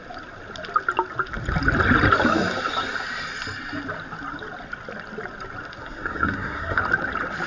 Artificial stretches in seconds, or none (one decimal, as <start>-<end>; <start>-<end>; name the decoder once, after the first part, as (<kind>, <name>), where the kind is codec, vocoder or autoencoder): 5.8-6.8 (codec, SNAC)